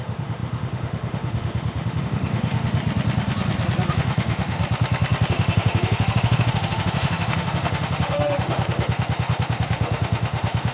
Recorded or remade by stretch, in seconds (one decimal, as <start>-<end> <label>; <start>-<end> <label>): 0.0-2.8 remade; 2.8-3.9 recorded; 3.9-4.6 remade; 4.6-5.3 recorded; 5.3-10.7 remade